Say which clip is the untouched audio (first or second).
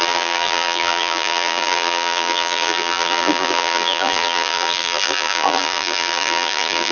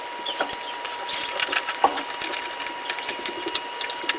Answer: second